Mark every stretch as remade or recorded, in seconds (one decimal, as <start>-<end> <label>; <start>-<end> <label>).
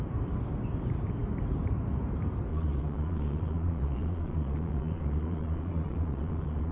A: 0.0-2.5 recorded; 2.5-6.7 remade